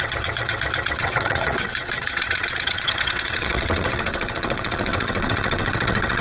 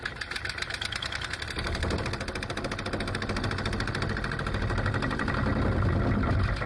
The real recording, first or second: second